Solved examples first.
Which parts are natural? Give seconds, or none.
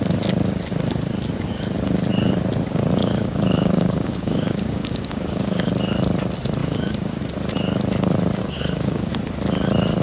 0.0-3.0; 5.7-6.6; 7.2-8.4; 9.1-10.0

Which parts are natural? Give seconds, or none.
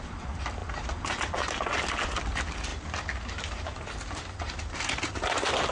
0.0-5.7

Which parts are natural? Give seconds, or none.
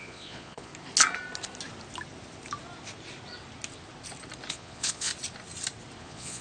0.7-4.5; 5.1-6.0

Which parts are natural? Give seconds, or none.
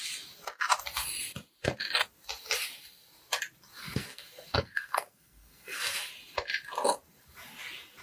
0.0-3.8; 6.1-8.0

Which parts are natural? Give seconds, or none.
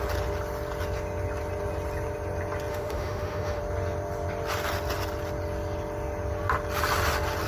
0.0-2.7; 3.6-7.5